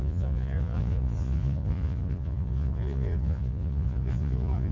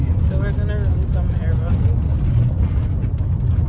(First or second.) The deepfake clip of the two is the first